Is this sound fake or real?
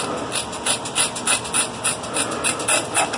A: real